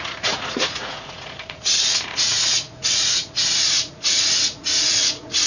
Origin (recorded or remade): remade